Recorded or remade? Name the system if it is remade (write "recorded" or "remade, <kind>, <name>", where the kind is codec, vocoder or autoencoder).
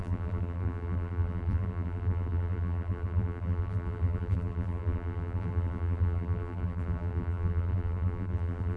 remade, vocoder, BigVGAN v2